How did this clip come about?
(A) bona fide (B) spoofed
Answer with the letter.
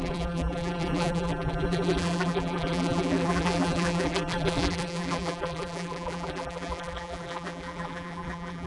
B